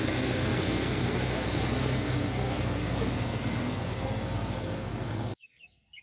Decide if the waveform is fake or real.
fake